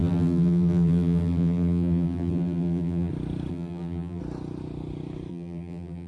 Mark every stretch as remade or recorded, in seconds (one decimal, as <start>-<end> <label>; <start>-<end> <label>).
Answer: 0.0-3.1 remade; 3.1-3.5 recorded; 3.5-4.2 remade; 4.2-5.3 recorded; 5.3-6.1 remade